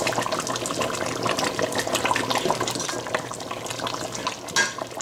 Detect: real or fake real